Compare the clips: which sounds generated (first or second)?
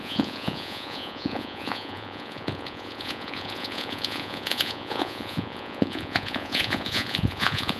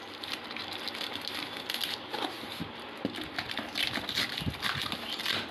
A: first